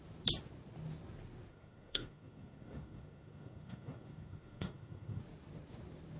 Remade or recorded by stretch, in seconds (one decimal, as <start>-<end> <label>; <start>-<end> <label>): 0.0-1.5 recorded; 1.5-5.2 remade; 5.2-6.2 recorded